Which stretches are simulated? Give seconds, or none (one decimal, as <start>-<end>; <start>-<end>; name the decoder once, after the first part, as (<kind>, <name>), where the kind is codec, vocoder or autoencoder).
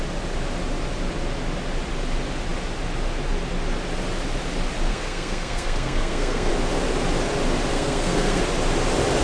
4.9-6.5 (codec, SNAC); 7.7-8.4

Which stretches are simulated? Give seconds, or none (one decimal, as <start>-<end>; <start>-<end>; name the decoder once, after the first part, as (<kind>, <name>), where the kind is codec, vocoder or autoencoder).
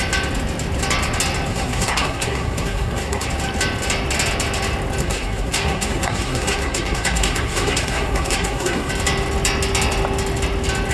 1.5-3.3 (codec, SNAC); 5.0-8.9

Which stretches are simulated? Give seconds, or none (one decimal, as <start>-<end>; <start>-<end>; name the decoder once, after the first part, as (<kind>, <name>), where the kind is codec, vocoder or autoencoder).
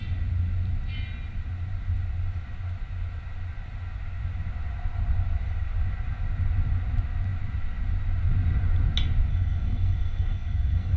9.3-11.0 (codec, SNAC)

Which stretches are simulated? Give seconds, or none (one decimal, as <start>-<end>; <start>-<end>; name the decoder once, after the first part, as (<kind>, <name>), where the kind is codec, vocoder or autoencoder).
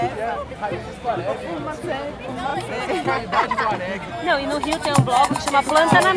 none